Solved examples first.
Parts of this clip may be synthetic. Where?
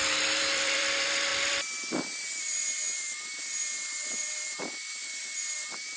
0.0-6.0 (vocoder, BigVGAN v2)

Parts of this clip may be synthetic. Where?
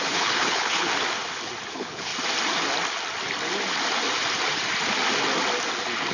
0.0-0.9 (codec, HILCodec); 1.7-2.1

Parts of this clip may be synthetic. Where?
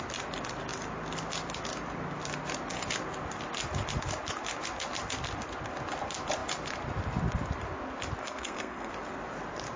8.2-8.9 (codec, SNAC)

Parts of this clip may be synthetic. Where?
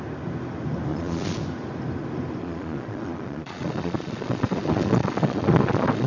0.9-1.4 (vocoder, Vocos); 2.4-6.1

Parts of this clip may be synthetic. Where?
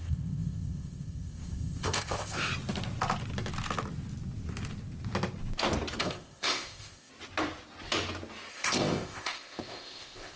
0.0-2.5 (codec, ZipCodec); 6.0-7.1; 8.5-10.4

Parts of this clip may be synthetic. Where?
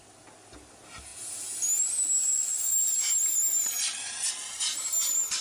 none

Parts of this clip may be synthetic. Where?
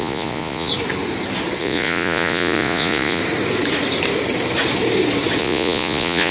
0.0-0.7 (vocoder, Vocos); 1.6-3.2; 5.4-6.3